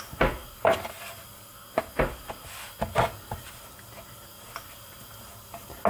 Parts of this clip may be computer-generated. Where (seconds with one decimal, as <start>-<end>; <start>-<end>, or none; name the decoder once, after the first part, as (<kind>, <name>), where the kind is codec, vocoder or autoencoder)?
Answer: none